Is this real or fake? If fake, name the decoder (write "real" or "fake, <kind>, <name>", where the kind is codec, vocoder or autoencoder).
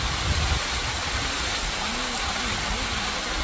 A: real